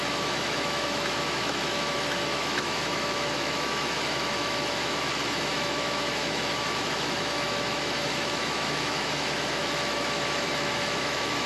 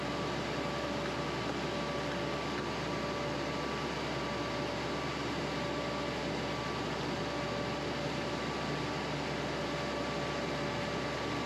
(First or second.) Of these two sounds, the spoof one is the first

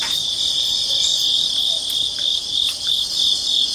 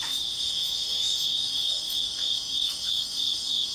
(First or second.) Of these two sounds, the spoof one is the second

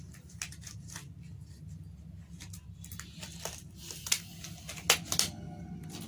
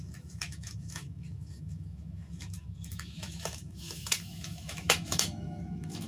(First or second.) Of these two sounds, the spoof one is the second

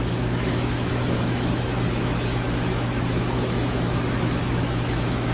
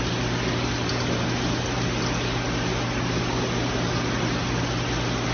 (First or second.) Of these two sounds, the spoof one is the first